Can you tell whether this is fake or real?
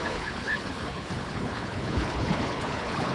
fake